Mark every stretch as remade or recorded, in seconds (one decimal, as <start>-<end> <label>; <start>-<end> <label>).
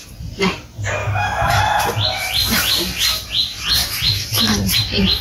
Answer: 0.0-1.0 recorded; 1.0-1.6 remade; 1.6-5.2 recorded